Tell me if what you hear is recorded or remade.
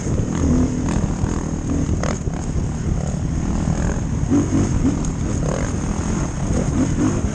recorded